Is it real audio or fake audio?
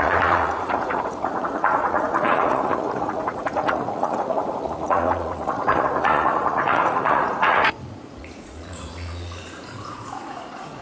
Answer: fake